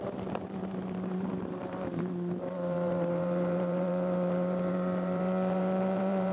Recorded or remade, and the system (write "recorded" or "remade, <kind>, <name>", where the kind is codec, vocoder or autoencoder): remade, vocoder, BigVGAN v2